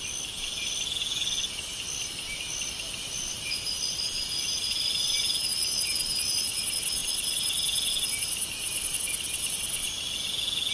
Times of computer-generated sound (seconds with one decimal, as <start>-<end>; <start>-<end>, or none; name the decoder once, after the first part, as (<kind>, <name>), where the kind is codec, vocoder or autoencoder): none